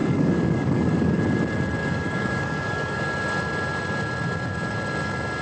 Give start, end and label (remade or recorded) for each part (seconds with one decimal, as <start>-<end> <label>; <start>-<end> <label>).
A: 0.0-1.2 remade; 1.2-1.8 recorded; 1.8-3.0 remade; 3.0-5.4 recorded